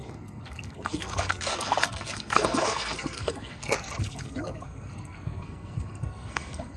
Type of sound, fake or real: fake